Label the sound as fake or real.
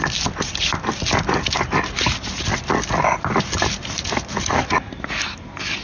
real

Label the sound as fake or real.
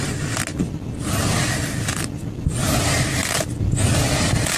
real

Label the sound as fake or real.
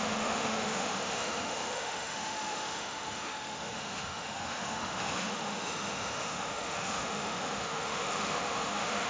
fake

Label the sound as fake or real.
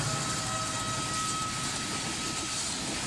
real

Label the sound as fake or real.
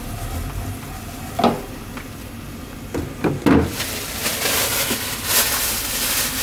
real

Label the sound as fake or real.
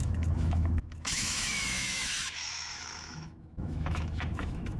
fake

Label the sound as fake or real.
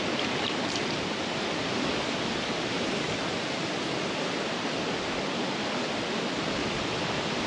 fake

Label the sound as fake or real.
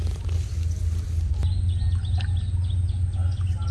real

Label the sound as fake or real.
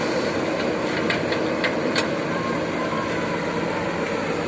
real